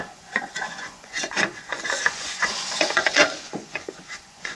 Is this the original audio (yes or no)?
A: no